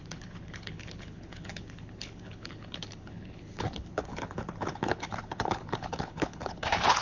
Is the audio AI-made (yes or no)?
yes